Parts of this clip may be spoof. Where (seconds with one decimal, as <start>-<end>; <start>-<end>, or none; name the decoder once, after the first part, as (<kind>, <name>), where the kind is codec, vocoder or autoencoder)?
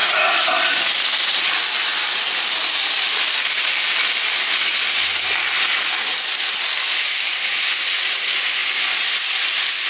none